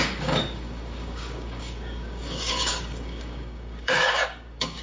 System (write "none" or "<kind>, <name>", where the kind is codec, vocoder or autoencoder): codec, DAC